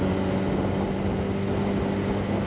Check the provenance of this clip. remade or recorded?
recorded